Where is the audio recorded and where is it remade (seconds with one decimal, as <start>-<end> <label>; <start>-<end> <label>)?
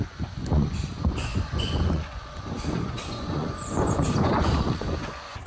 0.0-5.5 remade